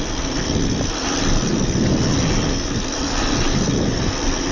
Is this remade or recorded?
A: recorded